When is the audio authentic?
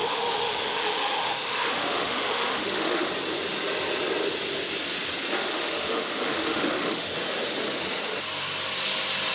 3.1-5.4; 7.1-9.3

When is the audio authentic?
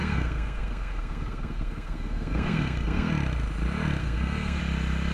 3.1-4.0; 4.6-5.1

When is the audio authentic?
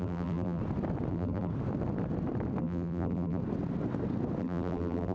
0.6-1.1; 1.5-2.6; 3.4-4.4